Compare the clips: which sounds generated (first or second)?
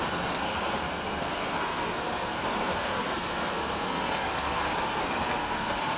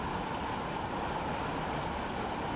first